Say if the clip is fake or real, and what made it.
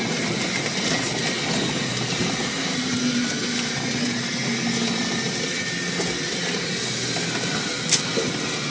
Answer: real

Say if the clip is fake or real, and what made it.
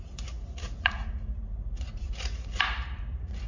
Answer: fake, vocoder, Vocos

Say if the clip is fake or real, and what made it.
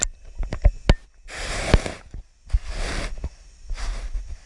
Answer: real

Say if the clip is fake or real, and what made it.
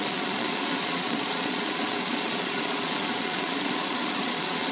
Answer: fake, vocoder, Vocos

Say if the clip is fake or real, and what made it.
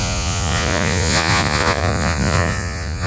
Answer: fake, vocoder, Vocos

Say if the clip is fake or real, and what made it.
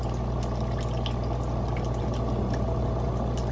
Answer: real